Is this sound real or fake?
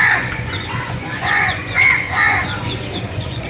fake